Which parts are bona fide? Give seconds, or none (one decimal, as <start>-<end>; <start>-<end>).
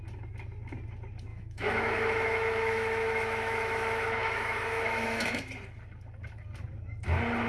0.0-1.3; 5.5-7.5